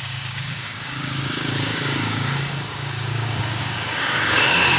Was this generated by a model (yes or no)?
yes